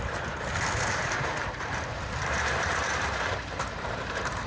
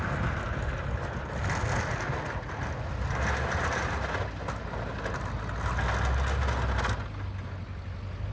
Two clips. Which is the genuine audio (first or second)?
second